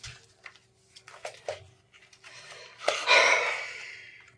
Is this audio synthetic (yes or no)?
no